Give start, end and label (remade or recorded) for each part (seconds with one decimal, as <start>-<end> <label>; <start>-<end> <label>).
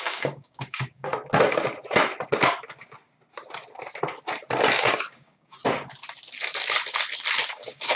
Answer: 0.0-1.1 remade; 1.1-4.8 recorded; 4.8-5.6 remade; 5.6-7.5 recorded; 7.5-8.0 remade